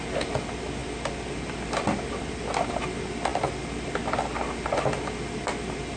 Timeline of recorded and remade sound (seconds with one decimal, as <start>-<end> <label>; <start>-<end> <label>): 0.0-6.0 recorded